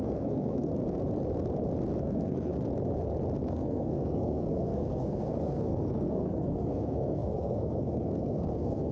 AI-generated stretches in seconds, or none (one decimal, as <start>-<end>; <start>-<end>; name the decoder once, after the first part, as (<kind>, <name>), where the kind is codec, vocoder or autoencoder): 0.0-0.7 (codec, SNAC); 2.0-2.5; 3.5-8.9